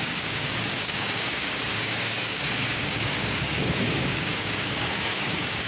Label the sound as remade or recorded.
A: remade